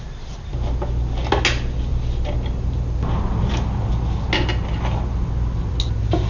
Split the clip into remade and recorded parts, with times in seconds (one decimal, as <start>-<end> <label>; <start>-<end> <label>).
0.0-6.3 recorded